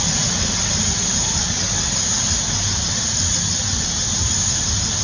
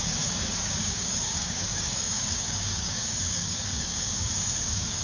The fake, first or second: second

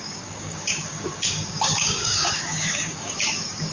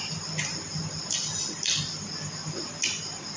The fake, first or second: first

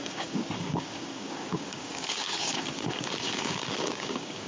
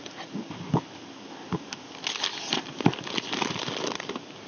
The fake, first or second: first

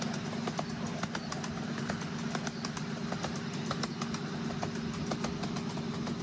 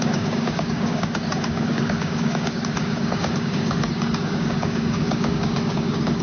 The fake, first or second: second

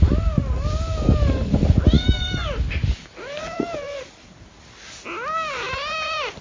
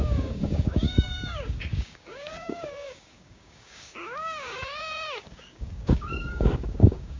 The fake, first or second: second